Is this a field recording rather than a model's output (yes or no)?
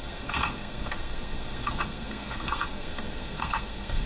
no